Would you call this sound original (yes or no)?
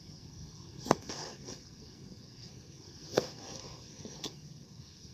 no